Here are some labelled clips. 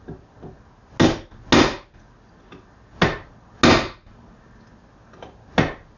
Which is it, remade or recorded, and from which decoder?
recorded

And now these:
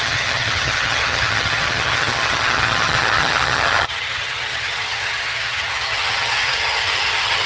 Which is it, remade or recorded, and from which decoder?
remade, vocoder, HiFi-GAN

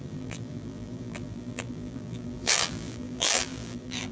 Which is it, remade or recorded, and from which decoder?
remade, vocoder, BigVGAN v2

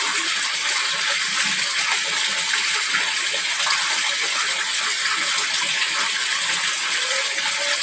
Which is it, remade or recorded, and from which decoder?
recorded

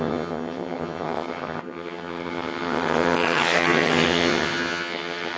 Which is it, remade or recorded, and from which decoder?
remade, vocoder, HiFi-GAN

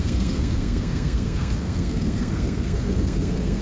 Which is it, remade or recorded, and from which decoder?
remade, codec, SNAC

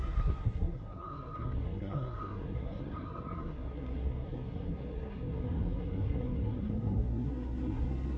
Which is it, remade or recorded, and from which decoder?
remade, codec, SNAC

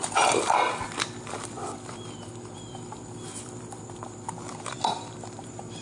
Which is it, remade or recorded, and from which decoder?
remade, vocoder, BigVGAN v2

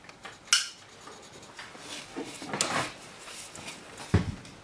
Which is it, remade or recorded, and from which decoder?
recorded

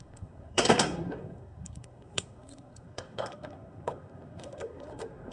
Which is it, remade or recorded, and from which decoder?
remade, codec, SNAC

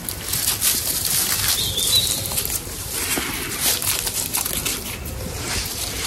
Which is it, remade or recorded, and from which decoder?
recorded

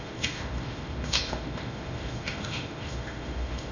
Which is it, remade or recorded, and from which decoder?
remade, autoencoder, DAC-VAE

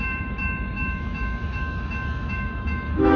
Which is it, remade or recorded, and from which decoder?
remade, autoencoder, DAC-VAE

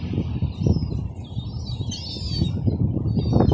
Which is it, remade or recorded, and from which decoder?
remade, vocoder, BigVGAN v2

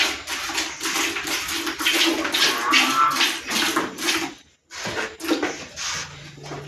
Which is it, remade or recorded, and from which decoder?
recorded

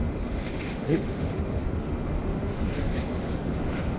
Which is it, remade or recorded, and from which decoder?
remade, autoencoder, DAC-VAE